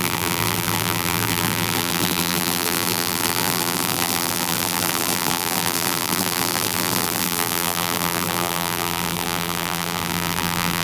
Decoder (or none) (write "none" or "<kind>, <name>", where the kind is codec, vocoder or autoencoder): vocoder, BigVGAN v2